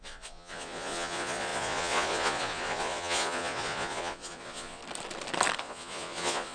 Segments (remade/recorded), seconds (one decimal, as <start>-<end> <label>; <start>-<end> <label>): 0.0-4.8 remade; 4.8-5.6 recorded; 5.6-6.5 remade